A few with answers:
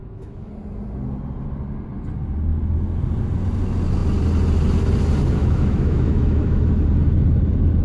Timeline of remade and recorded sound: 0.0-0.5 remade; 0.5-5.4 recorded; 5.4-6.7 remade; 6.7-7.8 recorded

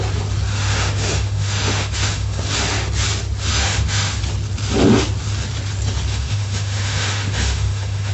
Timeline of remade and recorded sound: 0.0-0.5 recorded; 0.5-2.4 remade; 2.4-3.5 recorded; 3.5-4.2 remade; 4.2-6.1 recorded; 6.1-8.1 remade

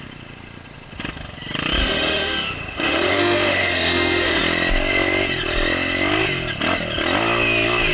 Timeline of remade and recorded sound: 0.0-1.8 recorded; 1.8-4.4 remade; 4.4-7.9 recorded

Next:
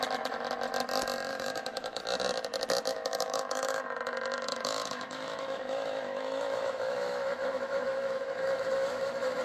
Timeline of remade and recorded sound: 0.0-1.3 recorded; 1.3-2.0 remade; 2.0-2.9 recorded; 2.9-3.8 remade; 3.8-4.5 recorded; 4.5-9.4 remade

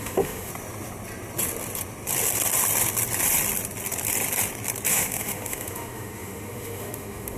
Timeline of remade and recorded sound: 0.0-0.5 remade; 0.5-4.9 recorded; 4.9-7.4 remade

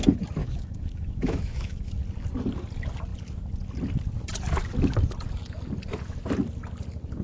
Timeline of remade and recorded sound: 0.0-0.4 recorded; 0.4-2.0 remade; 2.0-7.2 recorded

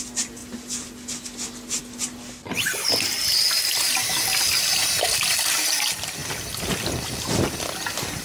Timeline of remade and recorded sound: 0.0-8.2 recorded